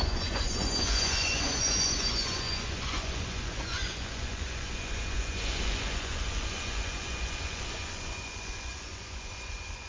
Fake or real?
fake